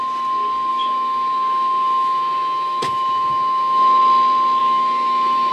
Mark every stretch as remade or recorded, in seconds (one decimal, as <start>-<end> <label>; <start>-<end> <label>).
0.0-0.7 recorded; 0.7-4.0 remade; 4.0-4.6 recorded; 4.6-5.5 remade